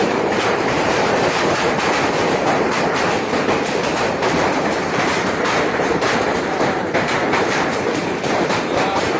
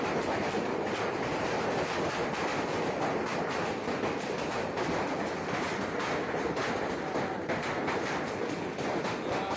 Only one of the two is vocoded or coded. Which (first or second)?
first